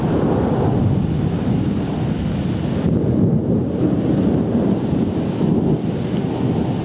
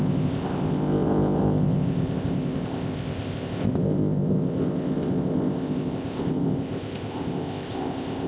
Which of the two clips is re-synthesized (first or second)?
second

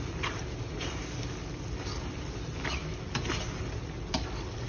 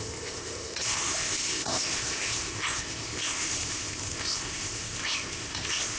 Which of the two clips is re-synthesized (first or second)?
second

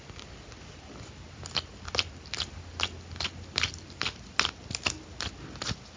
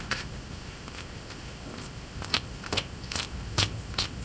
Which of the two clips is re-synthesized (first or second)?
second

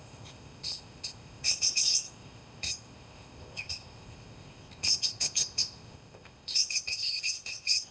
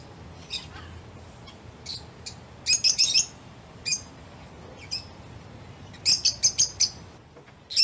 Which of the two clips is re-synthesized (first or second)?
first